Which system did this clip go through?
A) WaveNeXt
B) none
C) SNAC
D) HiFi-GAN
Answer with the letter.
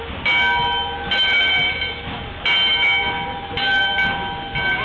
B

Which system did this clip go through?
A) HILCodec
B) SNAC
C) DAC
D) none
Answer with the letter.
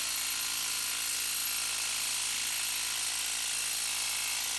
D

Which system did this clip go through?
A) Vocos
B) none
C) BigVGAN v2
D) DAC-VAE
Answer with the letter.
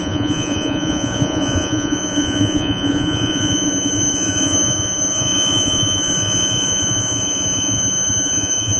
A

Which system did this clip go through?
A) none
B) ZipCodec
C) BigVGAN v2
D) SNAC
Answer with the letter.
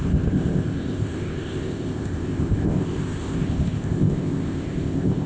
B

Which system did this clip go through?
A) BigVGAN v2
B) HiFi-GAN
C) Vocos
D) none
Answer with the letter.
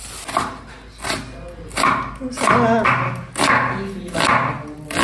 D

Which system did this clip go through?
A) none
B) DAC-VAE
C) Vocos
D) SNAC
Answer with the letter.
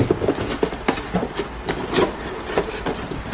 A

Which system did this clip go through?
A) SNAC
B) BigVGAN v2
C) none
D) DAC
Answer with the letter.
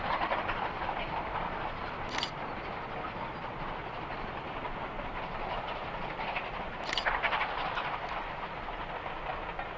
C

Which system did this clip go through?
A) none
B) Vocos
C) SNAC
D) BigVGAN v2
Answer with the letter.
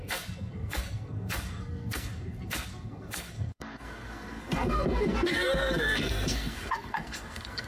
C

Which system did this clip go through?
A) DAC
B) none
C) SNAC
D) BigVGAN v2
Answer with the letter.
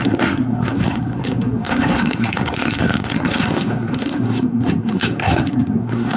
C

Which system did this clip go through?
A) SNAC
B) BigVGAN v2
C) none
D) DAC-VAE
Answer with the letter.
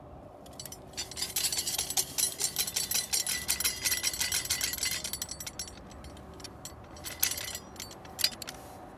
C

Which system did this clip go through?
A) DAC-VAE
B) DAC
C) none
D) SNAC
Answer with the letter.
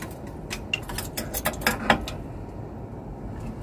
C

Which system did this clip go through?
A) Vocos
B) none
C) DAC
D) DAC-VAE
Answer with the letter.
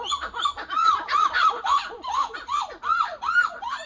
A